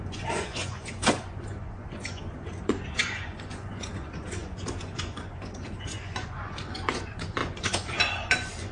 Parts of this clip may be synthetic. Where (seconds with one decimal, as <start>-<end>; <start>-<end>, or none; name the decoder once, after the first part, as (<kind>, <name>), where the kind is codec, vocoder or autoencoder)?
0.0-8.7 (vocoder, Vocos)